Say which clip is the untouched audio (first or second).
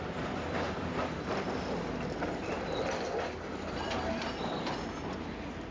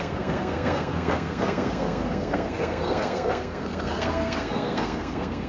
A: first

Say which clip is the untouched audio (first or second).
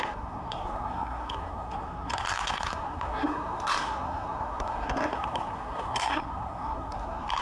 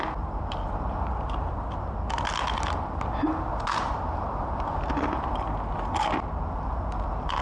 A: second